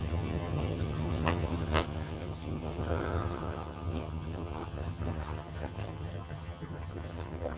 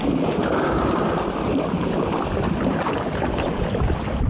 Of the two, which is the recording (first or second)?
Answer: second